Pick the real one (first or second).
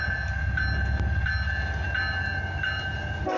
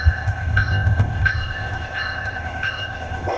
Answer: first